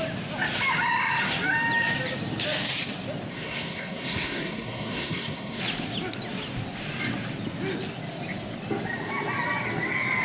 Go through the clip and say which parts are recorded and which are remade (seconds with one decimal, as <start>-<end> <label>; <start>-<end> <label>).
0.0-3.3 recorded; 3.3-5.6 remade; 5.6-10.2 recorded